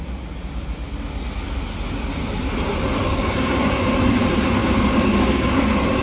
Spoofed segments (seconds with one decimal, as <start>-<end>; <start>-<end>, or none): 3.2-3.8; 4.6-5.5